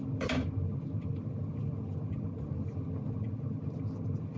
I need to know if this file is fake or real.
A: real